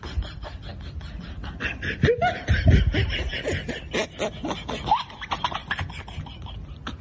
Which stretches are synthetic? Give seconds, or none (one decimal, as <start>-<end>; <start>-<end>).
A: none